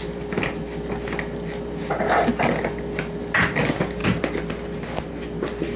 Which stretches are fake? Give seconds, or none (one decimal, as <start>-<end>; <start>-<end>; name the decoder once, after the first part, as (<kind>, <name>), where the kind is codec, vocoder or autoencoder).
none